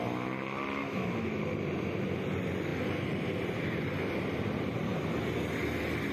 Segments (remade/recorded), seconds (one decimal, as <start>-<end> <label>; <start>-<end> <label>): 0.0-0.8 recorded; 0.8-1.4 remade; 1.4-6.1 recorded